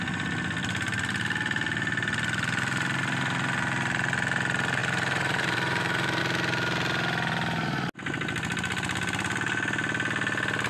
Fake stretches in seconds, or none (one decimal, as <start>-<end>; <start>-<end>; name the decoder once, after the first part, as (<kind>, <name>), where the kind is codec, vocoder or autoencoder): 4.8-6.2 (vocoder, BigVGAN v2)

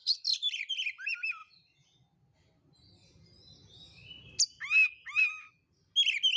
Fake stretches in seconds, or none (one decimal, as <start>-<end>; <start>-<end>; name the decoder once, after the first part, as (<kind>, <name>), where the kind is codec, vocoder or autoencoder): 0.0-0.7 (vocoder, BigVGAN v2)